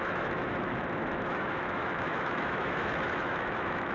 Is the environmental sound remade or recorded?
remade